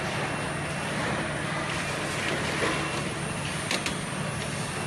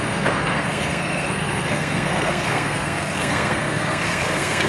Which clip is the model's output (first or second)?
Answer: second